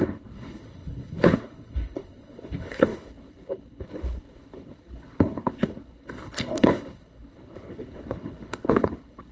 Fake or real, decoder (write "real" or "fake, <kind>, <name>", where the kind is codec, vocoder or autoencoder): fake, codec, HILCodec